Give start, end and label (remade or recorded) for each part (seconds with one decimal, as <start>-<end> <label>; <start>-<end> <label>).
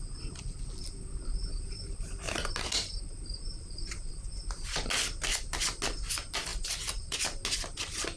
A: 0.0-3.5 recorded; 3.5-4.1 remade; 4.1-6.5 recorded; 6.5-7.4 remade; 7.4-8.2 recorded